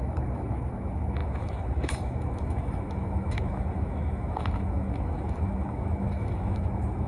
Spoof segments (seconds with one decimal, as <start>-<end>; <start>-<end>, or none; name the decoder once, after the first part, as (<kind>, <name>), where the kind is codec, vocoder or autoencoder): 0.0-7.1 (autoencoder, DAC-VAE)

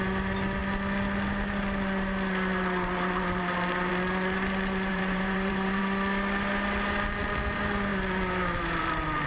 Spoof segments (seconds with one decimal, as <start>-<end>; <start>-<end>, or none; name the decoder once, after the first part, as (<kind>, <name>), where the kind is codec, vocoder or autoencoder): 4.9-5.8 (vocoder, BigVGAN v2)

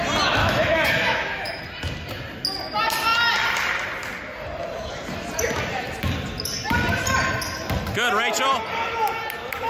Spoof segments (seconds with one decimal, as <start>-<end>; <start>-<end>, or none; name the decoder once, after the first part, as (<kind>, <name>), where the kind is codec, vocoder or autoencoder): 0.4-1.6 (autoencoder, DAC-VAE)

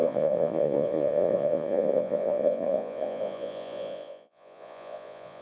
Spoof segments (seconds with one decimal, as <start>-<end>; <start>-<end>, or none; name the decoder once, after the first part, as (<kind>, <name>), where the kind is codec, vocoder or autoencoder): 0.0-5.4 (vocoder, Vocos)

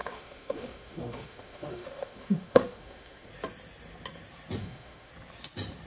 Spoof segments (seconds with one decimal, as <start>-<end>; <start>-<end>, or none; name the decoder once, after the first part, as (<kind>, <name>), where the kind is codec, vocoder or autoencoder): 0.0-3.3 (autoencoder, DAC-VAE); 4.6-5.1